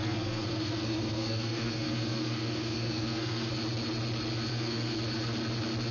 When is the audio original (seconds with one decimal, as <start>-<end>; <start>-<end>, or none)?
3.5-4.5; 5.0-5.9